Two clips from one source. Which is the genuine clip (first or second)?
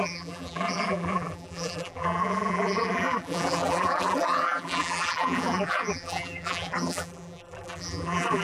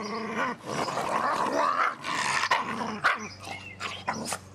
second